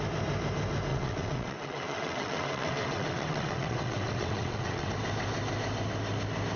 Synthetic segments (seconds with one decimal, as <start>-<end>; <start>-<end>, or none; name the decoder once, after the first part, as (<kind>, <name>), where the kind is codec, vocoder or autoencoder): 0.9-4.9 (vocoder, WaveNeXt)